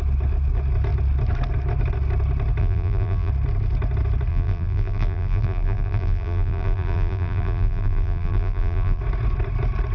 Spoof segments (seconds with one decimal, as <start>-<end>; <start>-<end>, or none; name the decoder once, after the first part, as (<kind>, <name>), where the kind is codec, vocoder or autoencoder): 2.6-3.3 (vocoder, BigVGAN v2); 4.3-9.0